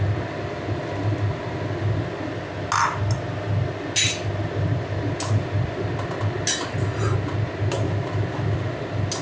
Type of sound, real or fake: real